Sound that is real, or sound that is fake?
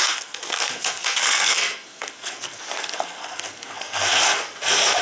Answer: fake